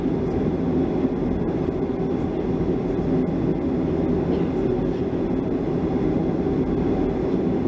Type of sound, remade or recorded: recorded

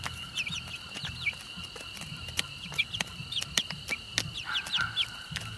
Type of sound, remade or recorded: recorded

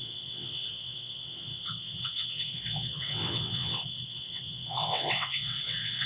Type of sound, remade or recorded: remade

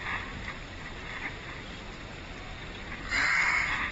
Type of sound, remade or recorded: recorded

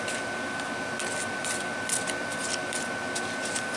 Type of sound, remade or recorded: recorded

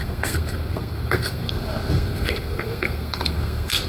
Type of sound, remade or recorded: remade